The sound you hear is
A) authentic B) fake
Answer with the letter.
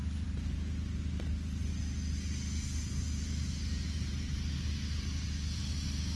A